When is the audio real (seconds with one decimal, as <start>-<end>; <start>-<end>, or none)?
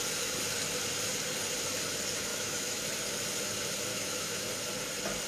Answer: 0.0-2.3; 2.8-3.9; 4.5-5.3